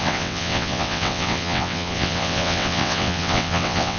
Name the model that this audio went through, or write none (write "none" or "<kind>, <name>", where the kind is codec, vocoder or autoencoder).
vocoder, WaveNeXt